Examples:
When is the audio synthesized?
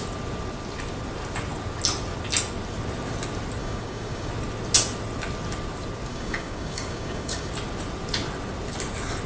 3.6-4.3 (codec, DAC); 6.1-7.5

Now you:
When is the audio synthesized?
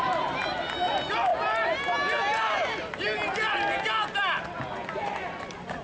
0.0-1.3 (vocoder, BigVGAN v2); 4.4-5.8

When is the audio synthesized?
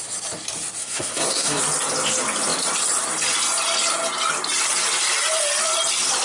0.8-1.6 (codec, SNAC)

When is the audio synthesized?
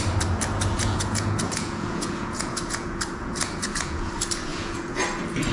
0.8-4.1 (vocoder, Vocos); 4.5-5.0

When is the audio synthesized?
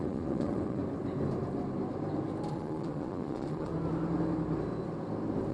0.0-0.8 (vocoder, Vocos); 2.5-3.7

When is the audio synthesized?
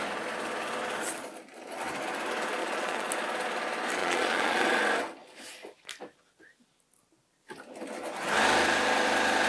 2.6-3.1 (vocoder, Vocos); 4.0-4.8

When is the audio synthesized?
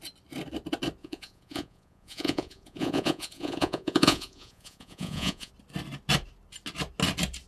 1.0-5.5 (vocoder, Vocos)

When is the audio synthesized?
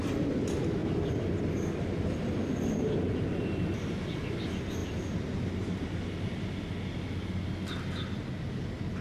4.8-5.9 (vocoder, BigVGAN v2)